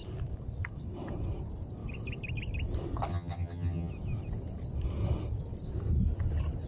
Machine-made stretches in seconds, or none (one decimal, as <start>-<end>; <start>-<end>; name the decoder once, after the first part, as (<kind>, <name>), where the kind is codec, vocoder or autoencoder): 3.1-3.9 (vocoder, HiFi-GAN)